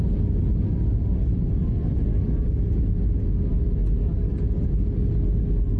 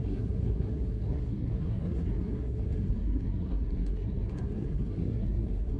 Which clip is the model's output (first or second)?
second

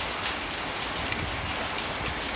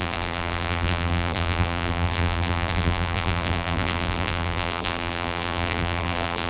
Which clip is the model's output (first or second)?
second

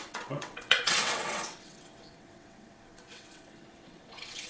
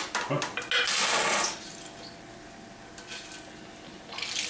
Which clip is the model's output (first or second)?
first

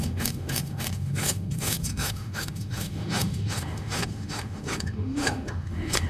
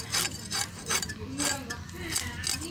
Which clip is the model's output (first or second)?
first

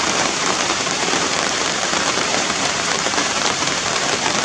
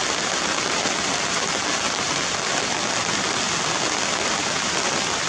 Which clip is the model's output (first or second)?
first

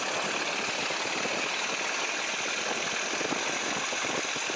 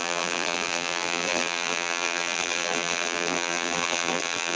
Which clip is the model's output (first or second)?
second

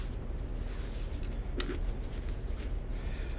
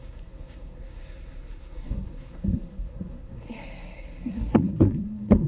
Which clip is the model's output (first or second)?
second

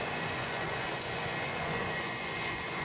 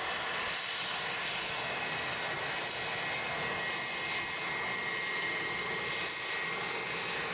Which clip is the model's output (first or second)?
first